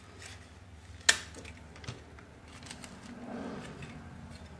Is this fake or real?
real